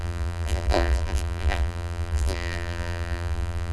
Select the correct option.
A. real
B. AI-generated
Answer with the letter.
B